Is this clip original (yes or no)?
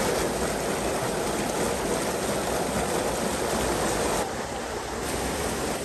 yes